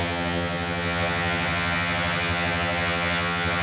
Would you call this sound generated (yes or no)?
yes